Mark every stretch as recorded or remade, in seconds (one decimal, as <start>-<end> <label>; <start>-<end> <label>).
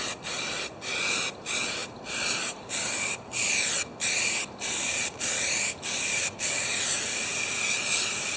0.0-8.4 recorded